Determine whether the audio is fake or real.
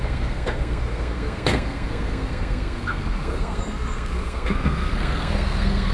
fake